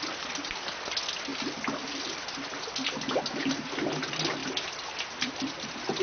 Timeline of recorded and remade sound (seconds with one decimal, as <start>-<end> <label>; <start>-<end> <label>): 0.0-1.3 recorded; 1.3-2.7 remade; 2.7-3.4 recorded; 3.4-3.9 remade; 3.9-4.4 recorded; 4.4-5.5 remade; 5.5-6.0 recorded